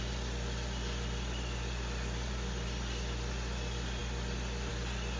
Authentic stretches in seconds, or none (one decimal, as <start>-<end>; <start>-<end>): 0.0-5.2